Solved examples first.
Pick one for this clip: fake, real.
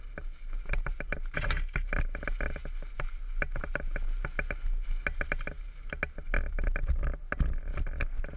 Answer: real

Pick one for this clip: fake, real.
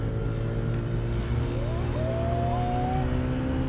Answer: real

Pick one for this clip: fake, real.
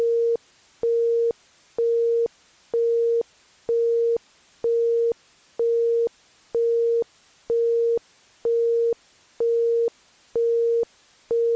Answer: real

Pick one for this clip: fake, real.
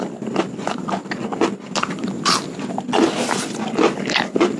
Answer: real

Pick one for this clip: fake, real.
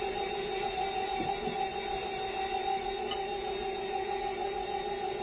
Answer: real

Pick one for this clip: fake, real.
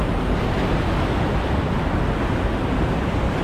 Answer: real